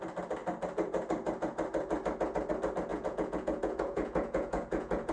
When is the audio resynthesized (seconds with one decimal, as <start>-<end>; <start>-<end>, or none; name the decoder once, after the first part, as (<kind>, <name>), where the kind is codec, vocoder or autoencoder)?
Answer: 2.9-5.1 (vocoder, Vocos)